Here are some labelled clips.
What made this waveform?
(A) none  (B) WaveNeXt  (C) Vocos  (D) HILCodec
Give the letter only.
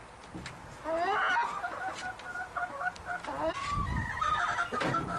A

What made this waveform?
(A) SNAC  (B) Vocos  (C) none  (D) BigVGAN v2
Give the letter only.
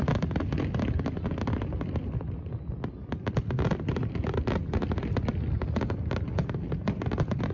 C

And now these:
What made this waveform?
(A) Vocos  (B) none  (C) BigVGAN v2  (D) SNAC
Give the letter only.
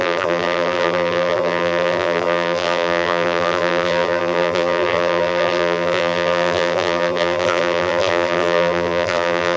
C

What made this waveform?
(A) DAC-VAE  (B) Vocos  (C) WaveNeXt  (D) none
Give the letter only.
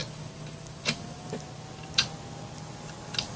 D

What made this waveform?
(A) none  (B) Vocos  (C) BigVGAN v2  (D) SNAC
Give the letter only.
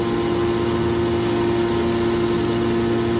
A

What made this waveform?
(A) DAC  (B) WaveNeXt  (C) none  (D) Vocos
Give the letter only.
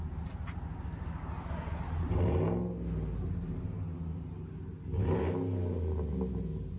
C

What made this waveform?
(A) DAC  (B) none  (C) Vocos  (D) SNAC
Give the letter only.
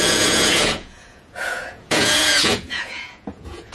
C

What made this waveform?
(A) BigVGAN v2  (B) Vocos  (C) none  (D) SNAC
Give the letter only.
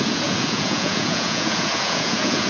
B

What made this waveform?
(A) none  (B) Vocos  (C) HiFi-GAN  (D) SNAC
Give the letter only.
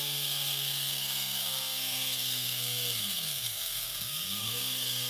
D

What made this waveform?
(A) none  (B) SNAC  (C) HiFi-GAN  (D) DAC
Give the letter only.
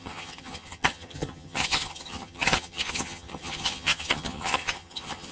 C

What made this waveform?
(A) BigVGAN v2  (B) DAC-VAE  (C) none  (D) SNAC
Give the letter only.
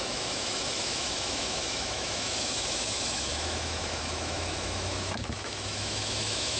B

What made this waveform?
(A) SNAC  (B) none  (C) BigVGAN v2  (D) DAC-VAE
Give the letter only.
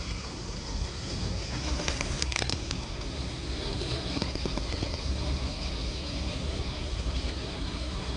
A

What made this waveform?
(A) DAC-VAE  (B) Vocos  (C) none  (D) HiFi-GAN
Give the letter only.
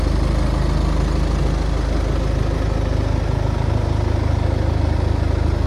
C